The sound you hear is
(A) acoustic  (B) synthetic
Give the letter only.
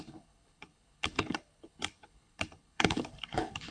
B